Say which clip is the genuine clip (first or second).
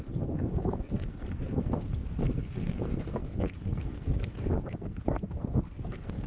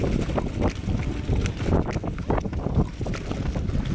second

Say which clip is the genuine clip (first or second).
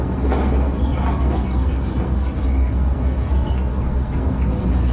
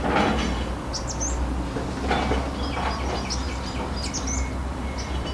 second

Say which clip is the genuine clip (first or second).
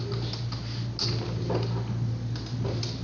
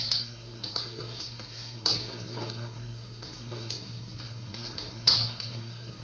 first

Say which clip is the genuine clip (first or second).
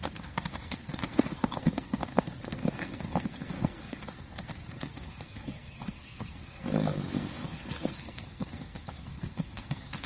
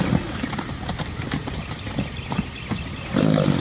second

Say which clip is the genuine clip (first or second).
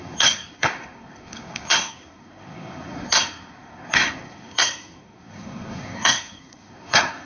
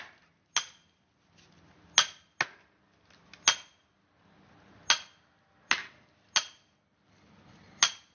second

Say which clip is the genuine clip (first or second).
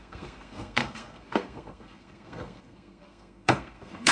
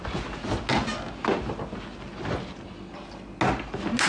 second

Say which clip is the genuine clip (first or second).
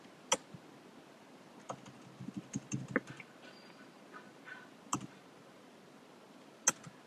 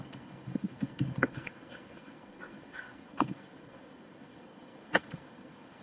first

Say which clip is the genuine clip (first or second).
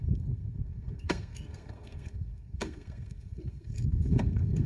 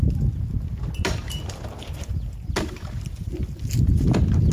second